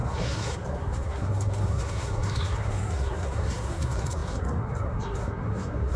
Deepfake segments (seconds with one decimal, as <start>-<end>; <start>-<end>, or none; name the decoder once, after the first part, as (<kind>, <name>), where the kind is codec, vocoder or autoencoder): 0.0-6.0 (codec, SNAC)